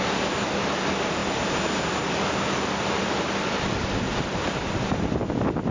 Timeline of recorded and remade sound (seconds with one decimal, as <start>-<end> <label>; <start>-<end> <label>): 0.0-5.7 recorded